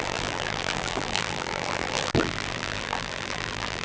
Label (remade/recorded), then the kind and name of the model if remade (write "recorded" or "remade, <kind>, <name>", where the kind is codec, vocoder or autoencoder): remade, vocoder, BigVGAN v2